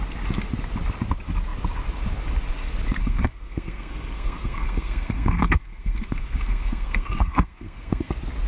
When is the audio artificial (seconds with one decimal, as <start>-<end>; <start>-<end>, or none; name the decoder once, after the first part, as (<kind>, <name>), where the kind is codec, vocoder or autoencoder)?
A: 3.0-8.1 (codec, SNAC)

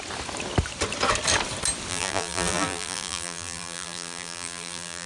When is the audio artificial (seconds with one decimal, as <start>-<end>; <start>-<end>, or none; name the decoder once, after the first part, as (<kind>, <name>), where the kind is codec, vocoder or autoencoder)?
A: 1.9-5.1 (vocoder, BigVGAN v2)